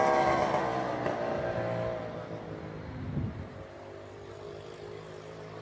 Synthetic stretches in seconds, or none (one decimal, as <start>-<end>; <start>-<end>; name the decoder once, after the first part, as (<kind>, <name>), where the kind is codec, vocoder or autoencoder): none